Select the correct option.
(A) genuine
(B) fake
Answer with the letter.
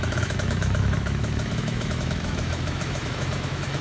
B